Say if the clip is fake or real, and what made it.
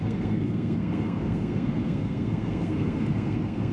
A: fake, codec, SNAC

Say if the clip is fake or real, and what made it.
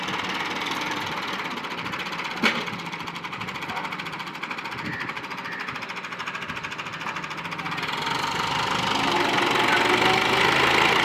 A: real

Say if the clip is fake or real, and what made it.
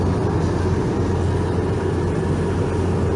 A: real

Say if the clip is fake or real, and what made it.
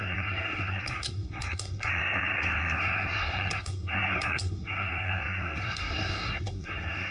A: fake, codec, SNAC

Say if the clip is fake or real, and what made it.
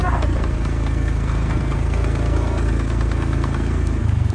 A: fake, codec, SNAC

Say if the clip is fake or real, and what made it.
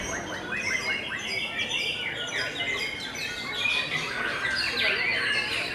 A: real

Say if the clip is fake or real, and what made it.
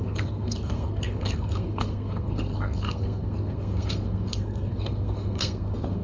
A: fake, codec, SNAC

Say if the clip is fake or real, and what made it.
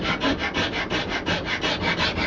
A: real